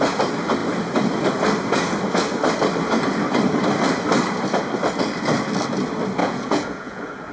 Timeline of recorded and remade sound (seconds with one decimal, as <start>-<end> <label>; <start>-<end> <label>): 0.0-6.2 recorded; 6.2-7.3 remade